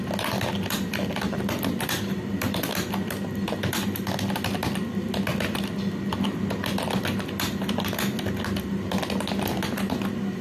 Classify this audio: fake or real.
real